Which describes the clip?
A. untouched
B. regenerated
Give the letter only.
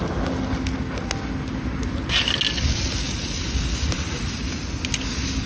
A